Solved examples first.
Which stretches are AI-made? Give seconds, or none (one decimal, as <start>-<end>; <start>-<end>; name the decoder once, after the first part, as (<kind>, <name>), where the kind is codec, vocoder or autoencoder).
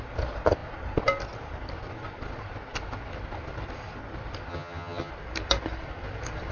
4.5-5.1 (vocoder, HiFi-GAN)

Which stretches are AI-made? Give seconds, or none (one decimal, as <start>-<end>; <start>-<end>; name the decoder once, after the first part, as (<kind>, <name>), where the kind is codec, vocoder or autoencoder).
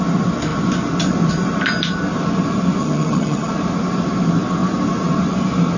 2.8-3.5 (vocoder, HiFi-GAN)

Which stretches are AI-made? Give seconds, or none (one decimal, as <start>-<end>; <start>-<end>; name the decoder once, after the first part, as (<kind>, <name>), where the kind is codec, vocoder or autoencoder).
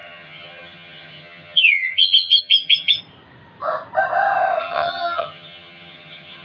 0.0-3.0 (vocoder, HiFi-GAN); 4.6-6.4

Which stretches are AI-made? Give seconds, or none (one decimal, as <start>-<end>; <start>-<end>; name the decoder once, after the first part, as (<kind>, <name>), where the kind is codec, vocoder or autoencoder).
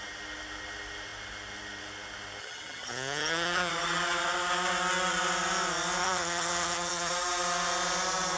2.4-3.7 (vocoder, HiFi-GAN); 6.0-7.1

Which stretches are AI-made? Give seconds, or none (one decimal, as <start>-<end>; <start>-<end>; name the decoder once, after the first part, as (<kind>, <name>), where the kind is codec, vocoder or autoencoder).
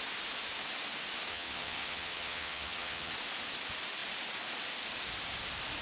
1.3-3.1 (vocoder, HiFi-GAN)